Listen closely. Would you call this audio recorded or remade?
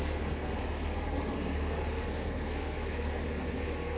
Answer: remade